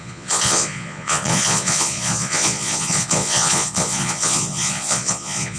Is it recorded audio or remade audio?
remade